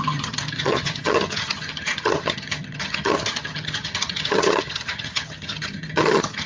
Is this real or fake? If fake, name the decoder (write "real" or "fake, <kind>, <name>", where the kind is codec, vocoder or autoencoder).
fake, vocoder, HiFi-GAN